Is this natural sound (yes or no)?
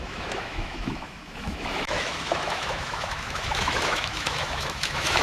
no